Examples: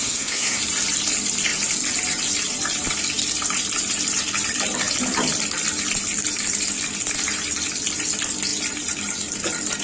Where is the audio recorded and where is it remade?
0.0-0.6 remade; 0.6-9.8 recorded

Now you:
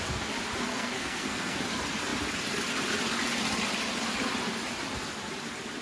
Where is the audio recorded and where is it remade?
0.0-0.7 recorded; 0.7-1.6 remade; 1.6-5.8 recorded

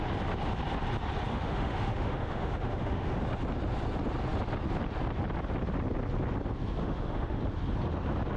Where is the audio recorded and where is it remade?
0.0-1.3 recorded; 1.3-3.2 remade; 3.2-6.8 recorded; 6.8-7.4 remade; 7.4-8.4 recorded

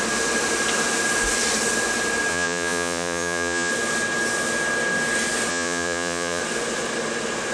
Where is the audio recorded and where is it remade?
0.0-2.3 recorded; 2.3-3.7 remade; 3.7-5.5 recorded; 5.5-6.4 remade; 6.4-7.5 recorded

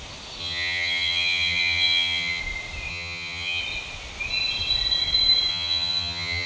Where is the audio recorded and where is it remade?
0.0-0.4 recorded; 0.4-2.4 remade; 2.4-2.9 recorded; 2.9-3.6 remade; 3.6-5.5 recorded; 5.5-6.5 remade